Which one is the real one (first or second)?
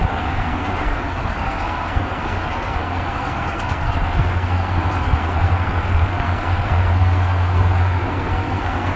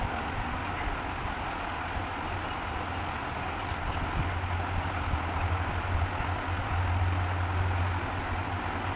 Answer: second